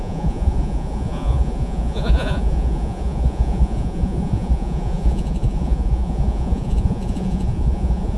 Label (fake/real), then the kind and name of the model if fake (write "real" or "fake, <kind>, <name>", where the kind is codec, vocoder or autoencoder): fake, vocoder, Vocos